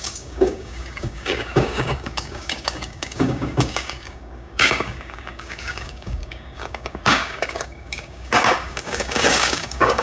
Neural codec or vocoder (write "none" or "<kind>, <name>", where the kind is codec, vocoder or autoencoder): codec, DAC